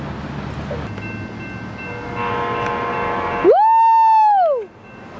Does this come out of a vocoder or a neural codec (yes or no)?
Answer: no